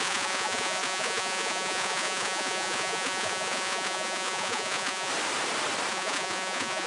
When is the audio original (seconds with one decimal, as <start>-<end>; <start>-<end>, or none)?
5.1-5.9